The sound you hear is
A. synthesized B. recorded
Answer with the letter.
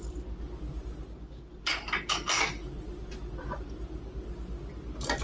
B